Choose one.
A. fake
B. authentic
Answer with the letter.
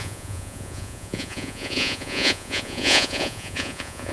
A